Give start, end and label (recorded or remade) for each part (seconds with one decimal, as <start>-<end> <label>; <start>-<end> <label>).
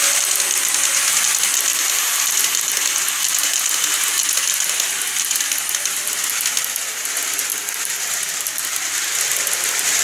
0.0-1.7 recorded; 1.7-2.4 remade; 2.4-7.5 recorded; 7.5-8.2 remade; 8.2-10.0 recorded